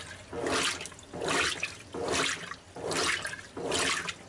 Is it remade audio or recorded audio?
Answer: recorded